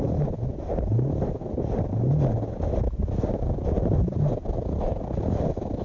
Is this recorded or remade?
recorded